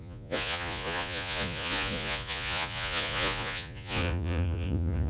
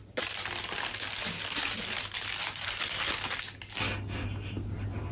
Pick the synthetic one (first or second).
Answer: first